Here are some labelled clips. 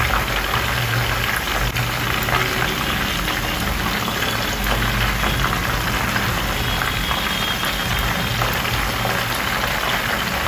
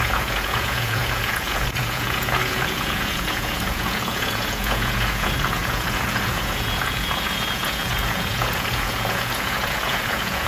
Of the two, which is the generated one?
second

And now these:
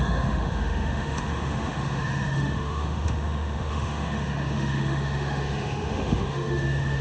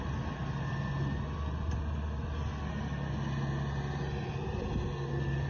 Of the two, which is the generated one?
first